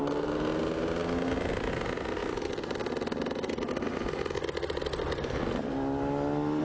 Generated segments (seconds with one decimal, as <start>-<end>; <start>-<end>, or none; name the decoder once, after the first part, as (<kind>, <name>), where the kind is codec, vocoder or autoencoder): none